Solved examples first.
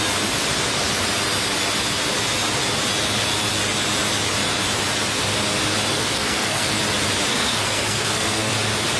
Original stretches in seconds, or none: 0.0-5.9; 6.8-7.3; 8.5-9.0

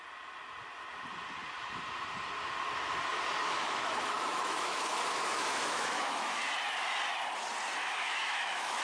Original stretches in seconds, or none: 0.0-3.4; 6.4-7.8